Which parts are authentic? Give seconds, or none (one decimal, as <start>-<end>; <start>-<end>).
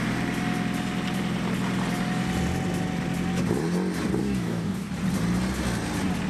0.0-4.2; 4.9-6.3